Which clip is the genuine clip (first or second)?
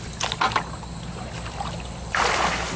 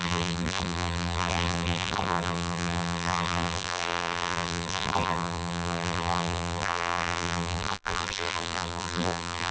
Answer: first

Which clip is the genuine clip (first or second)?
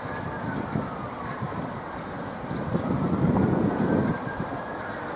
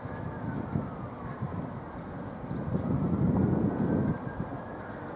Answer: second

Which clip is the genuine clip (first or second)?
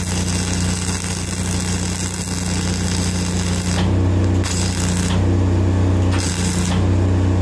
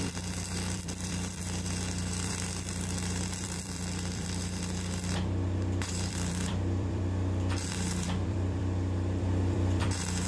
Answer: first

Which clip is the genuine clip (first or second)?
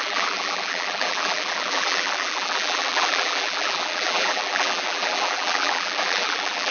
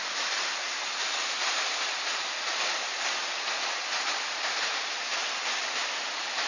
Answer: second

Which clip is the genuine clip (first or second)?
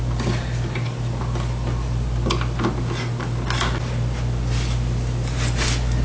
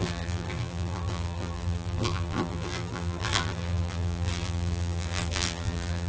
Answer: first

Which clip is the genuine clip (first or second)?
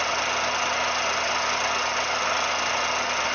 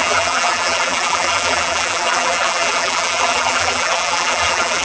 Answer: first